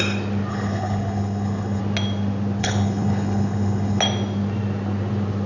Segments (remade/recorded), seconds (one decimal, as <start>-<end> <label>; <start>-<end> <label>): 0.0-0.5 recorded; 0.5-1.8 remade; 1.8-2.6 recorded; 2.6-4.0 remade; 4.0-5.5 recorded